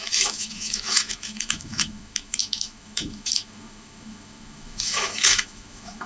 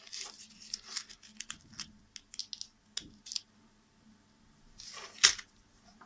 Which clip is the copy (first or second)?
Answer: first